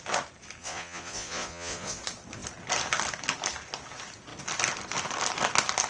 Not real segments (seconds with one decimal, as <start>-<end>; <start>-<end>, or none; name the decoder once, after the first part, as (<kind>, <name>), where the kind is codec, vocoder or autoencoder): 0.6-2.0 (vocoder, Vocos)

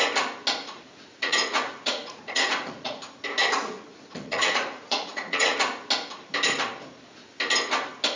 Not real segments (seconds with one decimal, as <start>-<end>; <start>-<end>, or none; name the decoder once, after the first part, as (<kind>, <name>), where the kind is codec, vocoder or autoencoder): 0.6-3.0 (vocoder, Vocos); 3.9-5.6

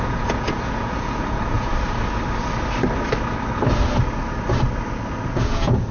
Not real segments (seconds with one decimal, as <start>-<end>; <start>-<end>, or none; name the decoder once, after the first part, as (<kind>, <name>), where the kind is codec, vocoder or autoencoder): 0.0-1.7 (vocoder, Vocos); 5.2-5.9